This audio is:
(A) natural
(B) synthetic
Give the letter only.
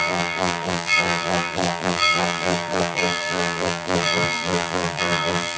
B